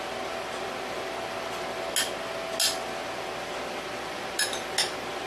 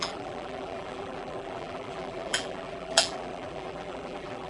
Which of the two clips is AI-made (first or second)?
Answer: second